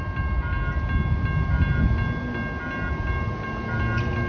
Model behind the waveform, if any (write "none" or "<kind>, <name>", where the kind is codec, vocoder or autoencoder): none